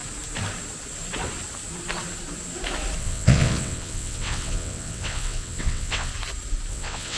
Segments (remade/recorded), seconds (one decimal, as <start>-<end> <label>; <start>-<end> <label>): 0.0-3.0 recorded; 3.0-6.1 remade; 6.1-6.7 recorded; 6.7-7.2 remade